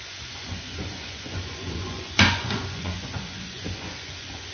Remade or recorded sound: remade